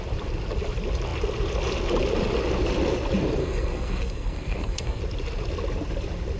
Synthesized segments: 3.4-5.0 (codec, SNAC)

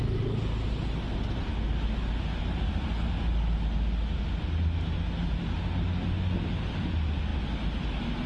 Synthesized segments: none

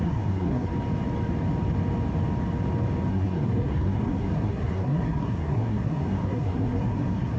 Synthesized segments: 0.0-0.7 (codec, SNAC); 3.1-7.4

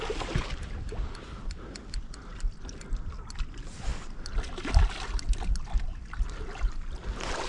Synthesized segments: none